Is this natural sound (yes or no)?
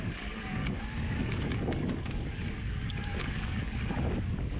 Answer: no